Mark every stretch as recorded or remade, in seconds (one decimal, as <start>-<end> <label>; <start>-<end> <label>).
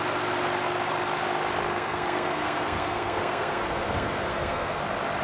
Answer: 0.0-1.7 recorded; 1.7-4.8 remade; 4.8-5.2 recorded